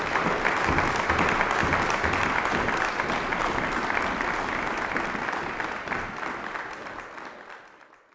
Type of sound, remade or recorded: recorded